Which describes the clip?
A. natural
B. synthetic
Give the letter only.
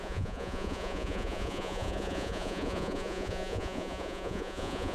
B